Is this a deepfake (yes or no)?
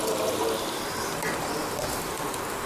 no